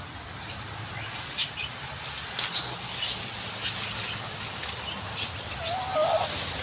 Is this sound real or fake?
real